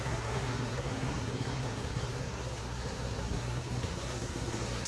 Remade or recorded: remade